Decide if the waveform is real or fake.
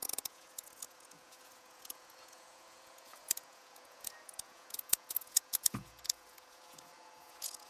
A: fake